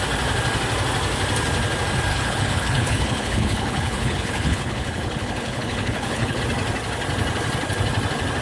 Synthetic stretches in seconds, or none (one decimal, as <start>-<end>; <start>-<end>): 2.1-6.4